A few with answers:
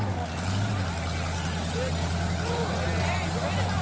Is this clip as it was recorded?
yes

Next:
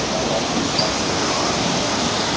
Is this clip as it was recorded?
yes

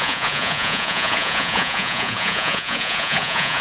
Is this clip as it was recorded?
no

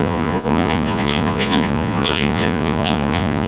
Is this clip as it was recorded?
no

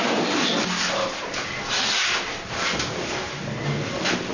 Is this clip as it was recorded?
yes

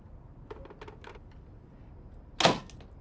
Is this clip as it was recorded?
yes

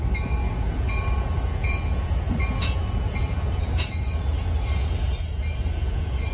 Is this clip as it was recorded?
no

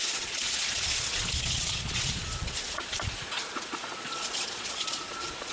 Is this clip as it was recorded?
no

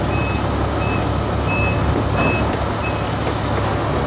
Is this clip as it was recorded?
yes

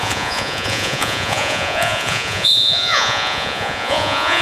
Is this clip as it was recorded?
no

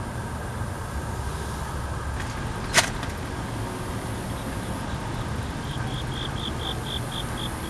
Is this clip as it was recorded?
yes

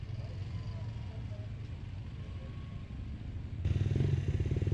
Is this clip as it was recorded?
yes